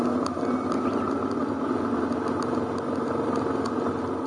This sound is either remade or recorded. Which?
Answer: recorded